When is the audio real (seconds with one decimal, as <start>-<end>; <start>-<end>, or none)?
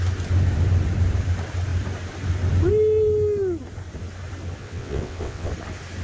0.0-4.6; 5.5-6.0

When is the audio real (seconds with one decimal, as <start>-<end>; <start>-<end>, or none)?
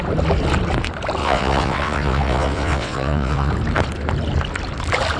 0.0-1.2; 3.5-5.2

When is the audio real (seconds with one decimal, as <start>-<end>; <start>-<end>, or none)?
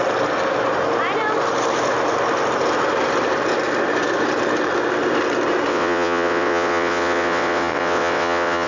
0.0-5.7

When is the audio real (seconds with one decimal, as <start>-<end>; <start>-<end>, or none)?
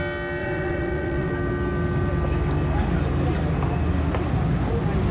0.0-0.4; 1.3-5.1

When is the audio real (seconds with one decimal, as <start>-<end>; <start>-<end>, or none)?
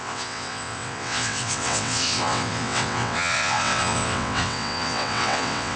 none